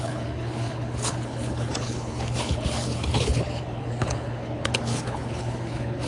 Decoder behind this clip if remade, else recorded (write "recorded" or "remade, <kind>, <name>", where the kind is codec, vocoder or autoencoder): remade, codec, HILCodec